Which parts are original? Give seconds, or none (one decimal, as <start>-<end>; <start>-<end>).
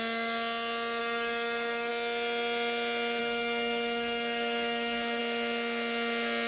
0.0-1.0; 1.9-3.2; 5.2-6.5